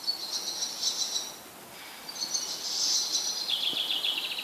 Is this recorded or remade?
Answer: recorded